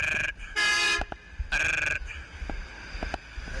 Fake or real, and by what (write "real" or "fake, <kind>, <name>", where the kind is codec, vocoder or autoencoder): real